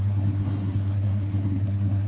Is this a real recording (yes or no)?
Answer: no